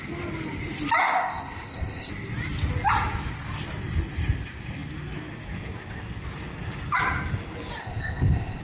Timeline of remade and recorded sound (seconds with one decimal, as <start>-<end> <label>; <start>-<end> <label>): 0.0-1.0 recorded; 1.0-2.1 remade; 2.1-7.8 recorded; 7.8-8.6 remade